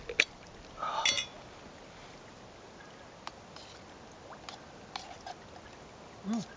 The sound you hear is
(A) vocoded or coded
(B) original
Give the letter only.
B